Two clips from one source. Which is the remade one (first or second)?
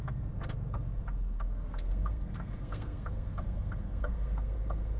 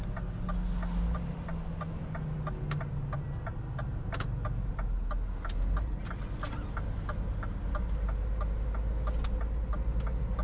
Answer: first